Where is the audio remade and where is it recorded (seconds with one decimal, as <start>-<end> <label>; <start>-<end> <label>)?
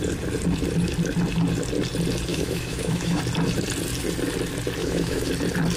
0.0-2.3 recorded; 2.3-3.2 remade; 3.2-4.8 recorded; 4.8-5.3 remade; 5.3-5.8 recorded